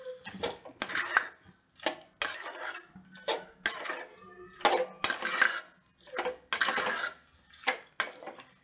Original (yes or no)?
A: yes